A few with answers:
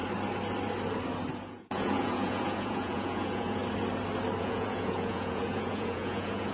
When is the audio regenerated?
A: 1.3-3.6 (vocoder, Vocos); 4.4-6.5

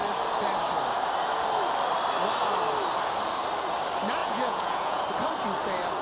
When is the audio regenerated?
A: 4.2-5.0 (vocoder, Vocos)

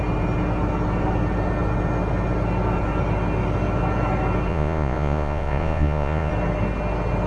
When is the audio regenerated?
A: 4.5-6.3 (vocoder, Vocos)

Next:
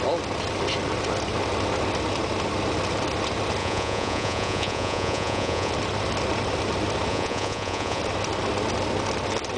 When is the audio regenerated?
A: 3.6-5.7 (vocoder, Vocos); 7.1-8.0

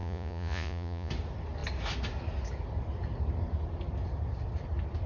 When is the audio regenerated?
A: 0.0-1.1 (vocoder, Vocos)

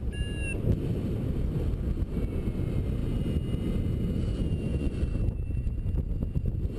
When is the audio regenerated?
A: 4.7-5.2 (vocoder, Vocos)

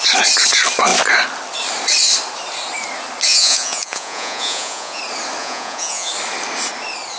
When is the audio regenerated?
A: 3.3-5.0 (vocoder, Vocos); 5.4-6.1